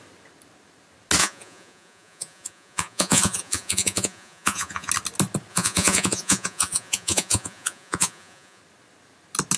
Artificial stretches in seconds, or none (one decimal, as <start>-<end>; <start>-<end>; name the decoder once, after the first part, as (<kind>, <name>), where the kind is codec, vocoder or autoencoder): 1.2-4.9 (vocoder, Vocos); 5.5-8.6